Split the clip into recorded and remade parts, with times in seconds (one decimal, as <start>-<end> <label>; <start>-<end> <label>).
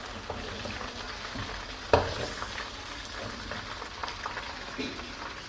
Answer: 0.0-5.5 recorded